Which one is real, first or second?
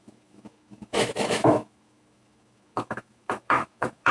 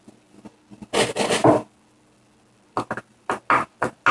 second